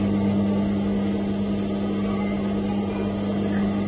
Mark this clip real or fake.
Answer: real